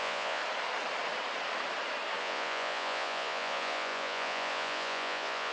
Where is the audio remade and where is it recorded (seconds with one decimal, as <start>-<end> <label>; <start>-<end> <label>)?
0.0-0.4 remade; 0.4-2.2 recorded; 2.2-5.5 remade